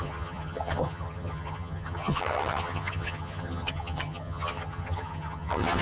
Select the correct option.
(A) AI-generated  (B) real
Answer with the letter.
A